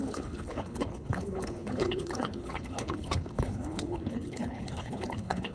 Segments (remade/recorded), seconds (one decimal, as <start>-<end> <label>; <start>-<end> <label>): 0.0-5.5 remade